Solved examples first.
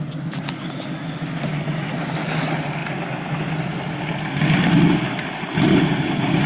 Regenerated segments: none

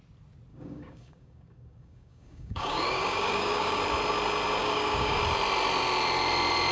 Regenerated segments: 0.5-3.8 (codec, DAC); 4.6-5.2

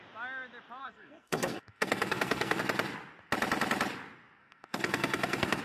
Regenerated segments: 0.8-2.6 (codec, SNAC); 4.4-5.6

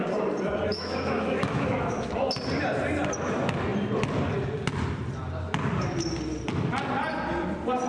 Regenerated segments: 0.7-2.1 (autoencoder, DAC-VAE)

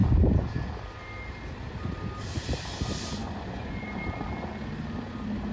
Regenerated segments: 3.2-3.9 (vocoder, Vocos)

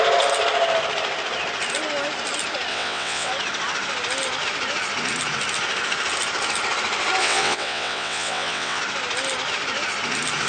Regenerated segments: 2.7-3.3 (vocoder, WaveNeXt); 7.2-8.8

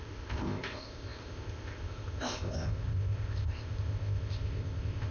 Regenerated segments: 0.0-5.1 (codec, ZipCodec)